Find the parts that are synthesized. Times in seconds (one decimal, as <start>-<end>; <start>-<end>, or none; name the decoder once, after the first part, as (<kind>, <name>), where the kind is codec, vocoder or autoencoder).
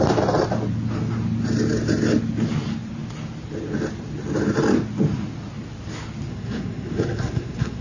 6.3-7.8 (codec, SNAC)